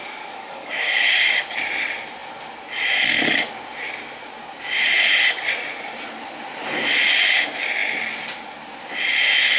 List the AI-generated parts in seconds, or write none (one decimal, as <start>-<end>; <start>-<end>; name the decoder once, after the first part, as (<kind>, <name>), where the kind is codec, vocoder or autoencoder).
0.0-1.1 (codec, DAC)